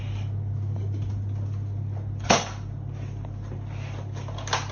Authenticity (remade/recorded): recorded